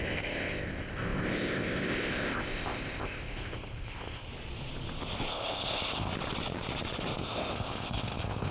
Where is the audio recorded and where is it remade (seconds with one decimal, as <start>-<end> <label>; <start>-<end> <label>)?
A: 0.0-4.3 remade; 4.3-5.3 recorded; 5.3-6.1 remade; 6.1-7.2 recorded; 7.2-8.5 remade